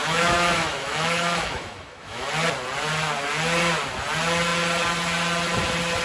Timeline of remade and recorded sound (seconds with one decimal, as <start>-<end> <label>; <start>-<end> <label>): 0.0-2.3 remade; 2.3-6.0 recorded